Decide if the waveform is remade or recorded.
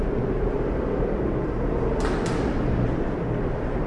recorded